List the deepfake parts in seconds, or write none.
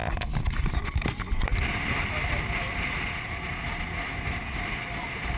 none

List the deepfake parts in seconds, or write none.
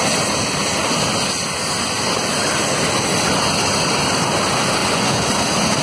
4.8-5.3 (vocoder, Vocos)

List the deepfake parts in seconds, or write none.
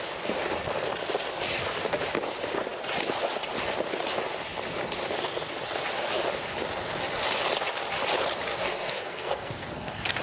8.5-10.2 (codec, SNAC)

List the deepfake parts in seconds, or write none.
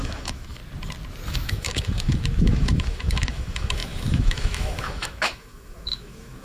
0.0-0.6 (autoencoder, DAC-VAE); 1.3-6.4